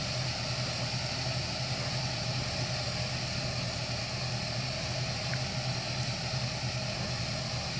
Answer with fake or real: real